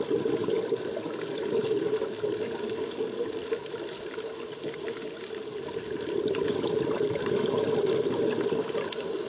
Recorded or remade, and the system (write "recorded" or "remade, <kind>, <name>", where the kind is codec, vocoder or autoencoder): remade, vocoder, BigVGAN v2